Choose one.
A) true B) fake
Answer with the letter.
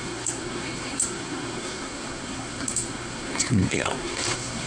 B